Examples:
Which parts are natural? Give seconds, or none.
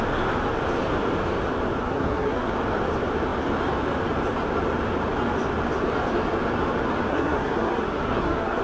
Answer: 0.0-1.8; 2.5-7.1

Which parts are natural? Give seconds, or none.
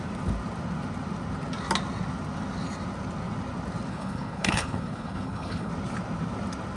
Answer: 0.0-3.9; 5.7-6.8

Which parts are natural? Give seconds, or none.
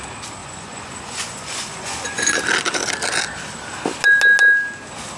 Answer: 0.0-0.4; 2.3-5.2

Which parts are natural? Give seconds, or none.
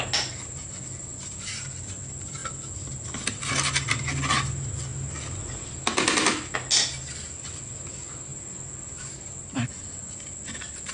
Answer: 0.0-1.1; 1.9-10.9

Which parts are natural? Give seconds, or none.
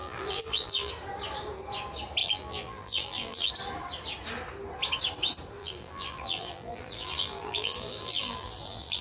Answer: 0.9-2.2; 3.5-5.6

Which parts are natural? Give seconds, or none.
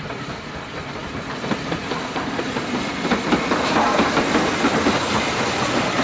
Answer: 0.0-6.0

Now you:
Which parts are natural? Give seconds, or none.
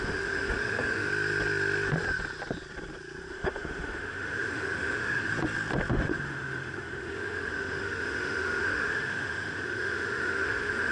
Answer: 1.1-3.3; 5.3-5.9